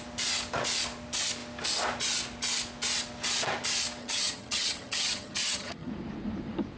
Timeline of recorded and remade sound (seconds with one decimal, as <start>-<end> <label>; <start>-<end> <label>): 0.0-4.0 recorded; 4.0-5.9 remade; 5.9-6.8 recorded